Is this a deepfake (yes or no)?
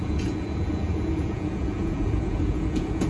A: yes